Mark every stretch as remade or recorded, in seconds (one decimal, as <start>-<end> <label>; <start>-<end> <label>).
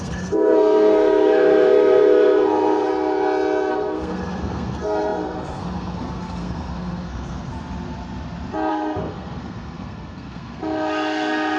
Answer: 0.0-2.9 remade; 2.9-3.7 recorded; 3.7-7.5 remade; 7.5-8.7 recorded; 8.7-11.6 remade